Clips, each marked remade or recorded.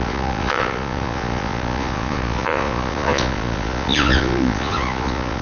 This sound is remade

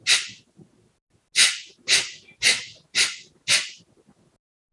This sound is recorded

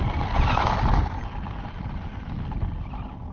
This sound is recorded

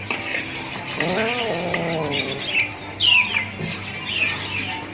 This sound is recorded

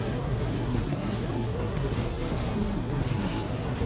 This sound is remade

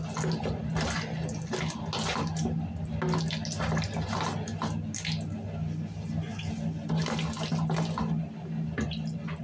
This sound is recorded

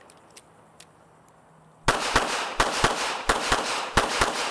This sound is recorded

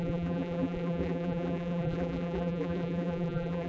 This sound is remade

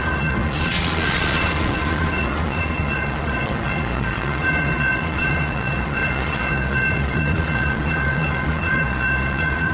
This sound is remade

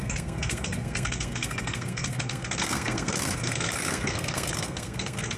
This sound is remade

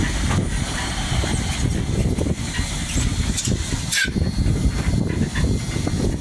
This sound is recorded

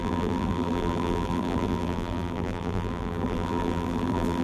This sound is remade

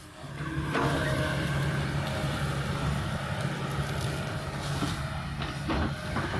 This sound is recorded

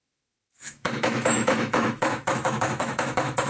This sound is remade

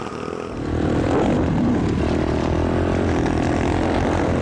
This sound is recorded